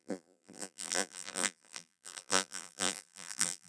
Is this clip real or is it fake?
fake